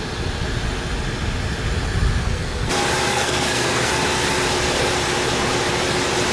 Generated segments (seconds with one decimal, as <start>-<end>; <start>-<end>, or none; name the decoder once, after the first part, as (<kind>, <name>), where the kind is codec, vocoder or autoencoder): 2.2-2.7 (codec, SNAC); 3.1-3.9